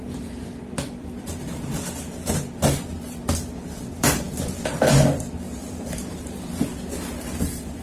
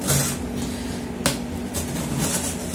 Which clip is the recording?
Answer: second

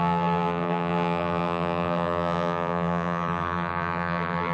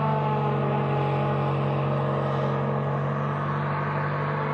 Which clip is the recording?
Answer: second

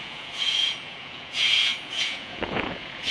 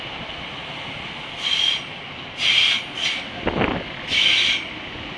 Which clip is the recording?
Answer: second